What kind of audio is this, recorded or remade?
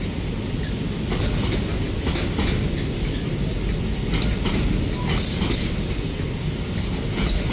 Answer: recorded